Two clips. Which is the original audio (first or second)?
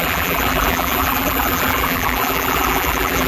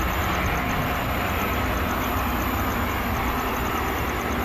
second